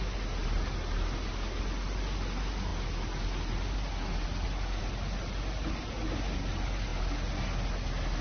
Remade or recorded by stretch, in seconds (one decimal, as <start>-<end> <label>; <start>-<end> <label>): 0.0-8.2 recorded